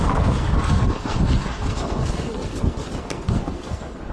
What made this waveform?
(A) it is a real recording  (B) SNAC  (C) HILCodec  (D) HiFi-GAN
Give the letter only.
B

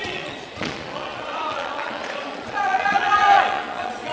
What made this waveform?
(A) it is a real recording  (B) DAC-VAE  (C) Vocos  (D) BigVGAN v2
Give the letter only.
C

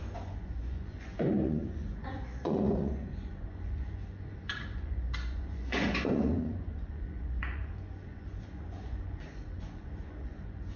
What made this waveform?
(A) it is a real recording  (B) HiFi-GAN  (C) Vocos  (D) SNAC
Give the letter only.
C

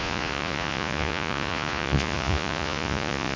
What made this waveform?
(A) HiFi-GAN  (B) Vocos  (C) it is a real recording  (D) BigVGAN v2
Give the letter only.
B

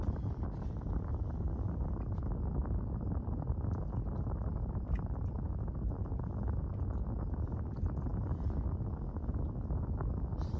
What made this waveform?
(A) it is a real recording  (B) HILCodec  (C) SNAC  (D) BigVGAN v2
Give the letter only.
A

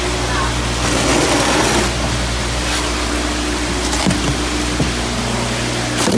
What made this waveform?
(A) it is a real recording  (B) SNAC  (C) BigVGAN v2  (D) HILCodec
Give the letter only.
A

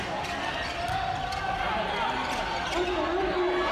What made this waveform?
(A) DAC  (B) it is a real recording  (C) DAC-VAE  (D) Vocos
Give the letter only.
B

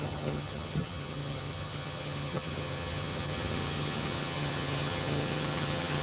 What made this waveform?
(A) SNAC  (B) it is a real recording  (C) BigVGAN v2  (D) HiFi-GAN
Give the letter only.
D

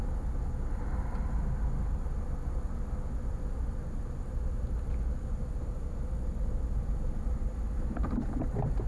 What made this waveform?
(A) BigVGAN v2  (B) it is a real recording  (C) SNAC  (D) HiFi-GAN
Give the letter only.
B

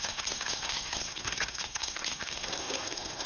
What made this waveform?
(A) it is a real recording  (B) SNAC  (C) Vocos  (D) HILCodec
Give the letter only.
B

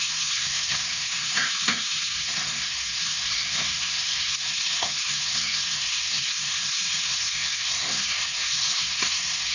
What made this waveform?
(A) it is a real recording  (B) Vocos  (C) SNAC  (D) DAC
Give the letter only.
C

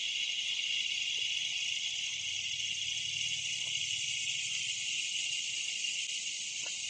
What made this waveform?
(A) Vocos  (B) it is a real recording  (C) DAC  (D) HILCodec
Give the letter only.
B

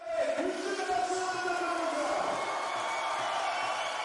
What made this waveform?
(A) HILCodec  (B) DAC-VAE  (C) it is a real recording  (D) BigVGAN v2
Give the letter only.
C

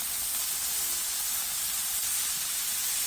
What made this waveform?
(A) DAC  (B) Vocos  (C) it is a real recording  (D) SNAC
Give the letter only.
C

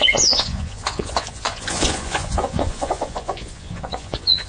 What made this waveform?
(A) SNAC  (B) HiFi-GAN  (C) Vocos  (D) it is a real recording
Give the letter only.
C